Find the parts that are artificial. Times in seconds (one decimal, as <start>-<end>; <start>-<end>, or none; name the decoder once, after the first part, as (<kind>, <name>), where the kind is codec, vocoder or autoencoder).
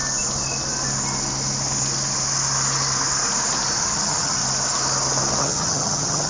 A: 3.8-4.4 (vocoder, HiFi-GAN); 5.4-6.3